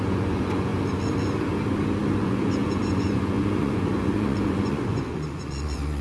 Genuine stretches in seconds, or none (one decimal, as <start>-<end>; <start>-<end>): 0.7-2.2